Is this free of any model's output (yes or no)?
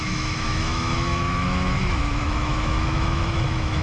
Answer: no